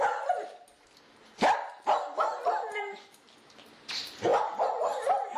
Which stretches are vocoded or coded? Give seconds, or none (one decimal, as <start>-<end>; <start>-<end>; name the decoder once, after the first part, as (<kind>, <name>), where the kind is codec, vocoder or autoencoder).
none